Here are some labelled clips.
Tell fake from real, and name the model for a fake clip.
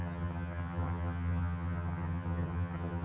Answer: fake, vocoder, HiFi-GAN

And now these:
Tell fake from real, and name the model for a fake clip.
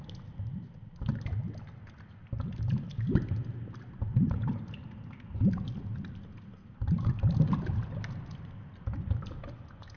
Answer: real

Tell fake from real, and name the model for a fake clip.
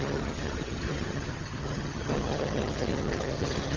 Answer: fake, vocoder, HiFi-GAN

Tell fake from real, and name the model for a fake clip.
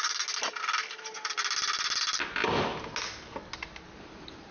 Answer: real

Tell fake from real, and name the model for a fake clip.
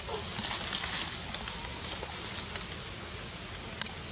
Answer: real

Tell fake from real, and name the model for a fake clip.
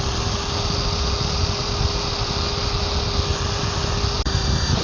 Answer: real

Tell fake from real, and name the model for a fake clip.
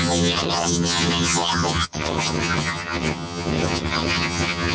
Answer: fake, vocoder, HiFi-GAN